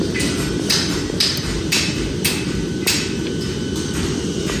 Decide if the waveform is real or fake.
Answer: real